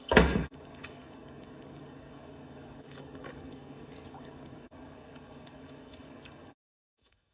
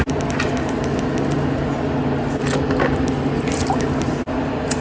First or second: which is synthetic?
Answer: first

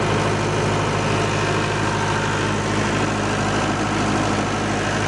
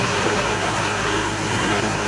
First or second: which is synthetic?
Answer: second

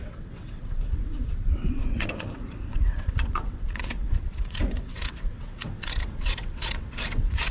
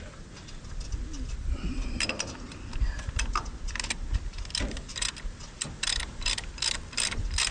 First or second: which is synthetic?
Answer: first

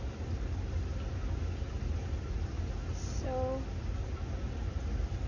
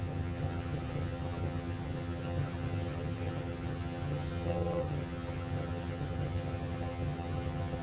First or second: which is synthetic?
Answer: second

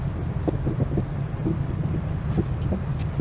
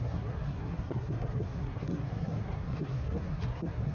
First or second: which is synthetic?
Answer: second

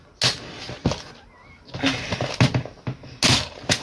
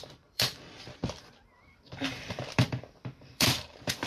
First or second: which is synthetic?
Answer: second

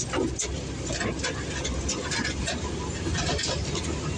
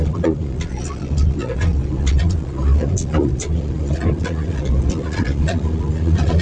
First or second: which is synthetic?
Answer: second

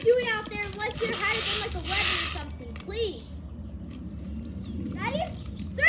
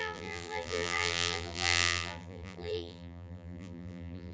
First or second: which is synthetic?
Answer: second